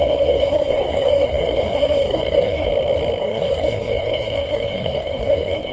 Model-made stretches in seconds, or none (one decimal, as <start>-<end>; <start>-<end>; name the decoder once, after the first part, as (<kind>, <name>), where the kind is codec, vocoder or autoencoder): 0.0-2.7 (codec, SNAC); 3.2-5.7